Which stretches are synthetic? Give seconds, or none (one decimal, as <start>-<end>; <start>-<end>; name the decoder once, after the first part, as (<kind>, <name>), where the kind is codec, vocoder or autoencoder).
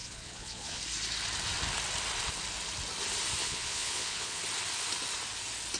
0.0-0.8 (vocoder, Vocos); 3.4-4.4